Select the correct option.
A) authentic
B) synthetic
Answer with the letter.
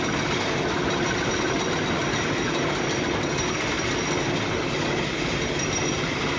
A